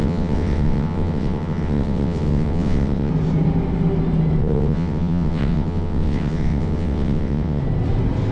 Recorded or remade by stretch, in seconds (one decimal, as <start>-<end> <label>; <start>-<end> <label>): 0.0-3.1 remade; 3.1-4.4 recorded; 4.4-7.6 remade; 7.6-8.3 recorded